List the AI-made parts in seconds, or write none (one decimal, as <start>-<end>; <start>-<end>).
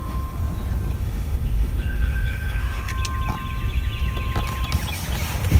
0.0-0.4; 1.0-2.9